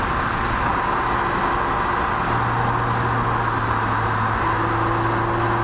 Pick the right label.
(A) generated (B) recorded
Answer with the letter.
B